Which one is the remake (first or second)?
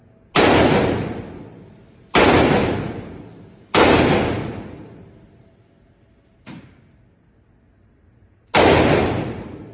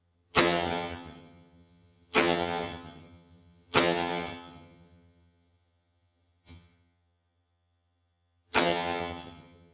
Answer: second